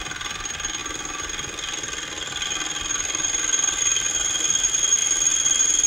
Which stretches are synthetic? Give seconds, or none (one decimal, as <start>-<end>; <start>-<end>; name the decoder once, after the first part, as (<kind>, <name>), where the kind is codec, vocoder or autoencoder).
none